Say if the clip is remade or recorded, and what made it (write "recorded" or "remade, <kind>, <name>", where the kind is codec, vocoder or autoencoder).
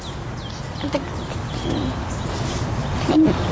recorded